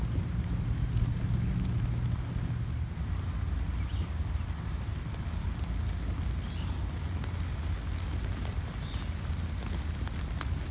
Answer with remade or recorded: recorded